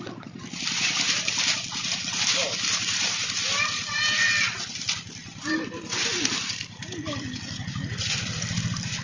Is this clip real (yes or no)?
no